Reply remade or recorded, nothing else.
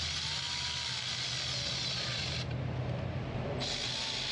recorded